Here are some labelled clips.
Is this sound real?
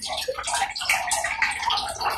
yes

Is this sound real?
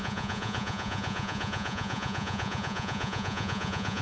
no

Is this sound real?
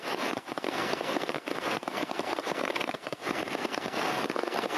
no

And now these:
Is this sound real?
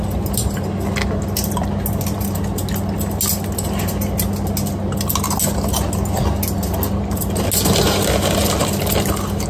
yes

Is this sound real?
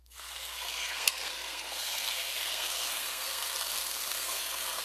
no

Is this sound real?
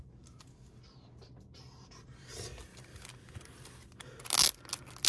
yes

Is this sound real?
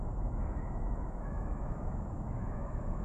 no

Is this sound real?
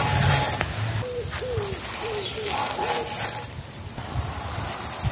yes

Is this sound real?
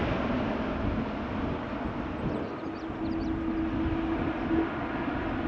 yes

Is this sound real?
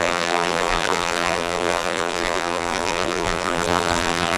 no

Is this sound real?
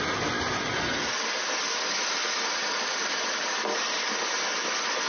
yes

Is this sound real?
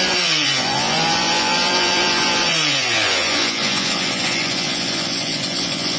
no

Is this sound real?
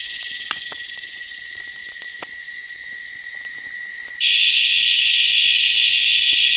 no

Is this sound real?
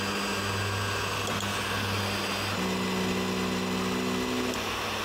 yes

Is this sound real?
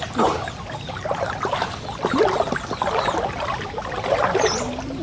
yes